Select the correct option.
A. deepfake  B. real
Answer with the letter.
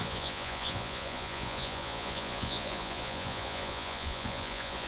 A